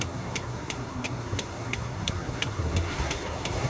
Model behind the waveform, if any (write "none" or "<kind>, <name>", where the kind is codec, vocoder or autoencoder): codec, SNAC